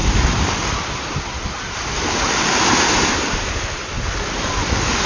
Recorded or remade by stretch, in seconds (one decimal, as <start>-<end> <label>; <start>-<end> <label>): 0.0-5.1 recorded